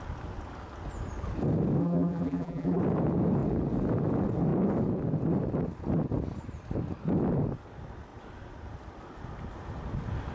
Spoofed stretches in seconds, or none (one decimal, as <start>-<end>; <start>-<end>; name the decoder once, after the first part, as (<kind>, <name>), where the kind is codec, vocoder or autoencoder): 1.8-2.8 (vocoder, BigVGAN v2)